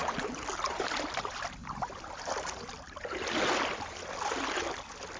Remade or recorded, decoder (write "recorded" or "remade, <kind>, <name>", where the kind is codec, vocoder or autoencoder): recorded